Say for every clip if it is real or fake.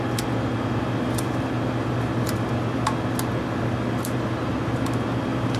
real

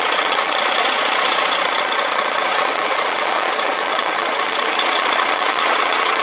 fake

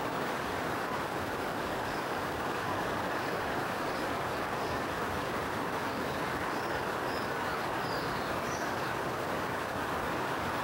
fake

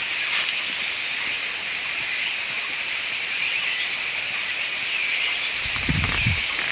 real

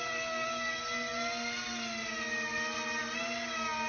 real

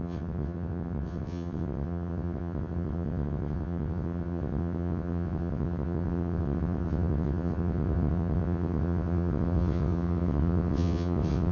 fake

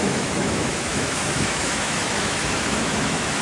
fake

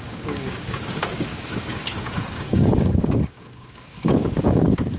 fake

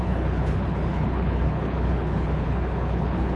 fake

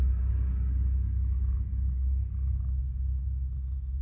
real